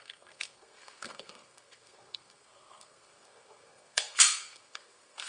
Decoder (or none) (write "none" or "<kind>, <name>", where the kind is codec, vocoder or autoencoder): codec, SNAC